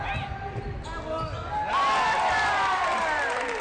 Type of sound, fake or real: real